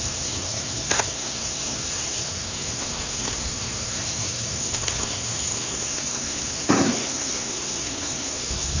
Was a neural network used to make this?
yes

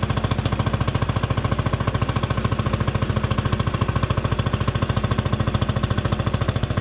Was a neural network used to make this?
no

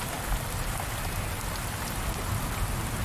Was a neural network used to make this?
no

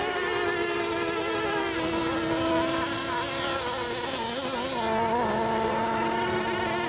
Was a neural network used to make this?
no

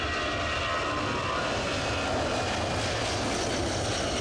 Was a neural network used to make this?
no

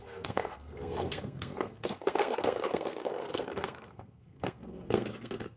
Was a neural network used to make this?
yes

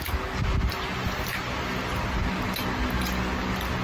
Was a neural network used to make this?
no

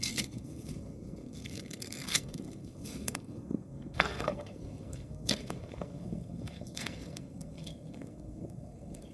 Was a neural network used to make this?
yes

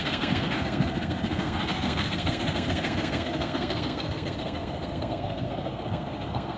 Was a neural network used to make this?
yes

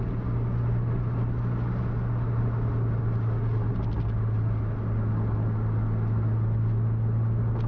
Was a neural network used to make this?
no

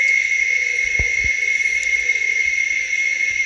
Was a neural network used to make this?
no